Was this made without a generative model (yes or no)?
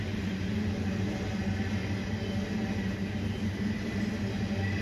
yes